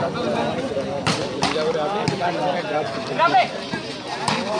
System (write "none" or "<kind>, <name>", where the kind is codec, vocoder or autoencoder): none